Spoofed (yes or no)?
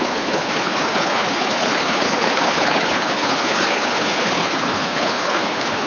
yes